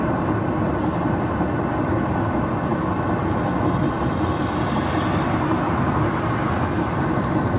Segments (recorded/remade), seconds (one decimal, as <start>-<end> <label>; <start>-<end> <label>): 0.0-7.6 recorded